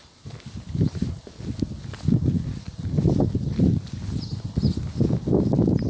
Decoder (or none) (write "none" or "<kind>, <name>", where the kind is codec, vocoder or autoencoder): none